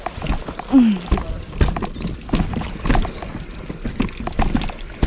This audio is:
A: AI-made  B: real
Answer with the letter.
B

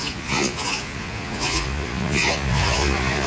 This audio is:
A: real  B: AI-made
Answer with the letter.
B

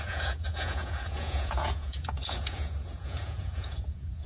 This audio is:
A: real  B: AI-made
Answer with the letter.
B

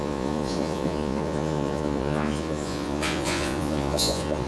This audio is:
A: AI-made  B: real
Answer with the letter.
A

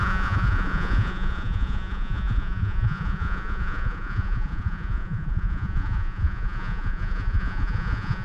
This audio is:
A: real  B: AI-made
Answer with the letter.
B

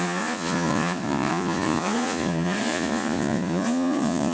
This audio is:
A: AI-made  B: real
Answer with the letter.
A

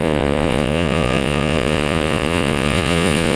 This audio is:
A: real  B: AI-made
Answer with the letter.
B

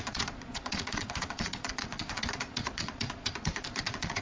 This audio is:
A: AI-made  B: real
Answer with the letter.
A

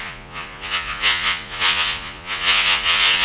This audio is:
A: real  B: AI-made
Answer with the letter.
B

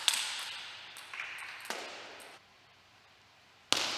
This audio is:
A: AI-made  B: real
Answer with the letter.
B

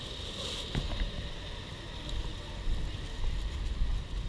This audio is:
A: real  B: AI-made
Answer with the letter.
A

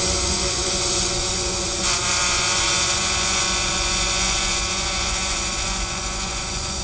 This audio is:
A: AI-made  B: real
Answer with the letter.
A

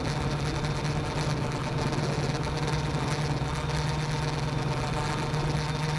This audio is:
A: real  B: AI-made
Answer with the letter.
A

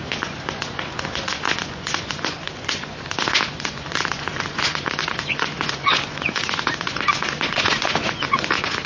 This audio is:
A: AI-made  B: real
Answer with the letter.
A